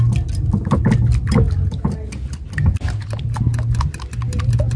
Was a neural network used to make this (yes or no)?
no